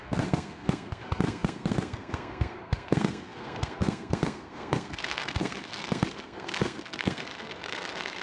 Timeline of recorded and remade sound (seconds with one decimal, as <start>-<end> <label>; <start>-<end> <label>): 0.0-8.2 remade